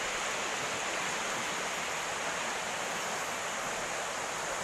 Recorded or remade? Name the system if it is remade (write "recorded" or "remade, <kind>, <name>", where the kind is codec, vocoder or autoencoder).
recorded